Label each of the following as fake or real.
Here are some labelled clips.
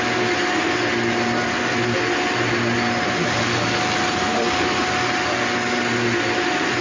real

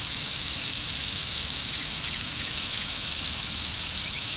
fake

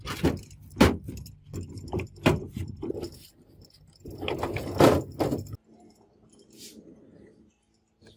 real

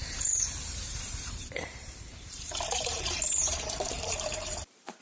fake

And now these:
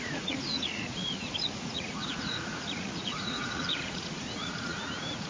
fake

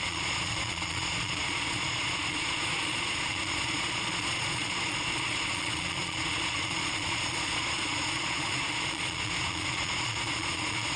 fake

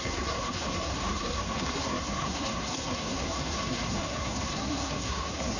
fake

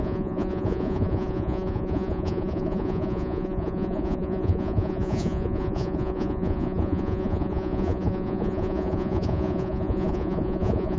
fake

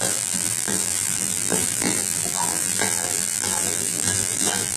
fake